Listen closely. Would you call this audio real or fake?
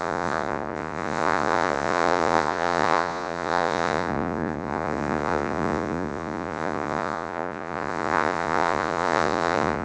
fake